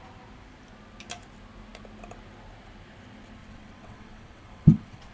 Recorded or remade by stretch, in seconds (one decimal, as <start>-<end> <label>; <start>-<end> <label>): 0.0-3.4 recorded; 3.4-5.1 remade